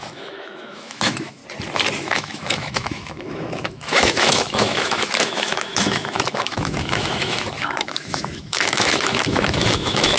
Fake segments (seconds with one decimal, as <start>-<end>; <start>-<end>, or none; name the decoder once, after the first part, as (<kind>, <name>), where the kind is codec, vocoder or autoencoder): 0.0-1.4 (autoencoder, DAC-VAE); 2.0-10.2